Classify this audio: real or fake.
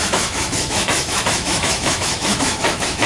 fake